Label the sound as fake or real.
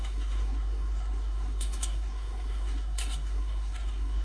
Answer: fake